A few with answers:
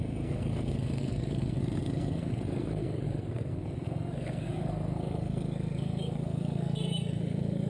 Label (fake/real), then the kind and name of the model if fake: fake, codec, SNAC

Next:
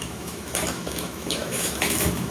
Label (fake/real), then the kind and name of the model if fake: fake, autoencoder, DAC-VAE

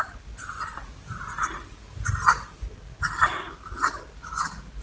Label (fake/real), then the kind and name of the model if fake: real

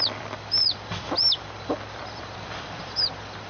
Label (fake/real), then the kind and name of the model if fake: fake, vocoder, BigVGAN v2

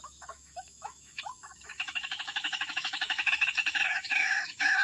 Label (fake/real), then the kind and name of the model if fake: fake, autoencoder, DAC-VAE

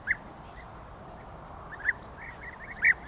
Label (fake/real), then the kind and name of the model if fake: real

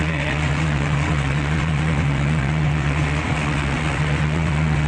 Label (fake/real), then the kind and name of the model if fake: fake, vocoder, WaveNeXt